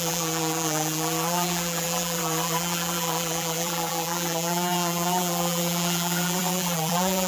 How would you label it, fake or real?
fake